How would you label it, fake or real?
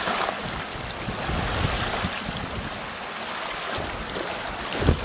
real